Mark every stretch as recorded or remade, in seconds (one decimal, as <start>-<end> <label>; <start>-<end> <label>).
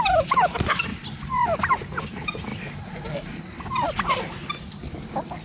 0.0-5.4 recorded